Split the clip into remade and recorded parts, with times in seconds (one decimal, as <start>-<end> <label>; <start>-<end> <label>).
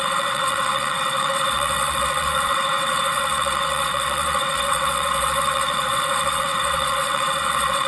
0.0-7.9 remade